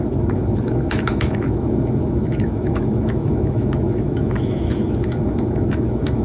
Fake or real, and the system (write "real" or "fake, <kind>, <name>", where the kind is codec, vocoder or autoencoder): fake, autoencoder, DAC-VAE